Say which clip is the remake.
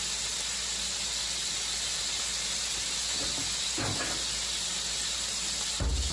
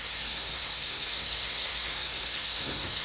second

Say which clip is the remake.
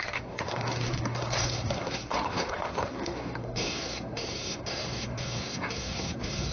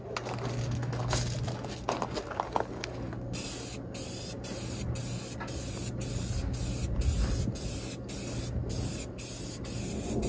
first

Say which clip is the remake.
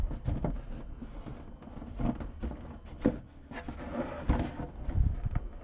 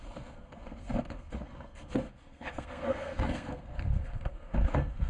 second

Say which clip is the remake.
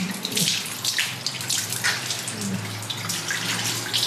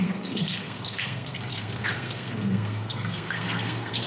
second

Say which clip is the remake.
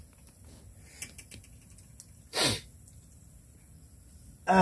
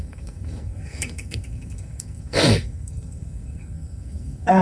second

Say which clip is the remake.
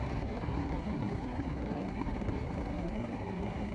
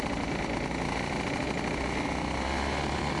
first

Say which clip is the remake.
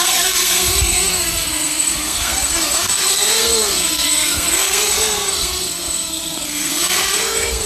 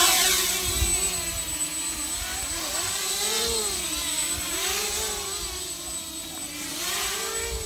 first